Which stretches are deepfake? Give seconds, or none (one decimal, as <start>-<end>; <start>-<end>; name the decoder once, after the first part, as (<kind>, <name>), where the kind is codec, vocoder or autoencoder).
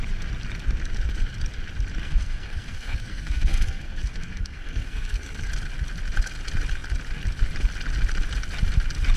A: 2.0-5.5 (codec, SNAC)